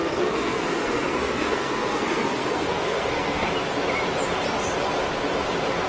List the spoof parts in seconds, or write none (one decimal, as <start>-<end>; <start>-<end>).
0.0-3.5